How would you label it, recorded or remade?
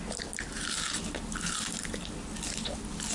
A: recorded